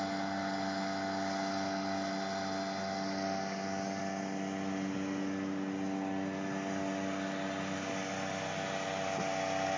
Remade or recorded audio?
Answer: recorded